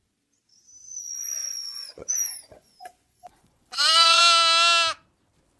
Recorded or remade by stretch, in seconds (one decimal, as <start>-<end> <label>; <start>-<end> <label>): 0.0-0.8 recorded; 0.8-4.2 remade; 4.2-5.6 recorded